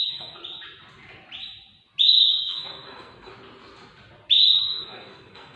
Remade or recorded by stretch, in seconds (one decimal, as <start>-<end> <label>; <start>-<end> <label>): 0.0-0.4 remade; 0.4-2.3 recorded; 2.3-3.3 remade; 3.3-4.6 recorded; 4.6-5.6 remade